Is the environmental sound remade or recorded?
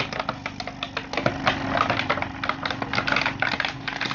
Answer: recorded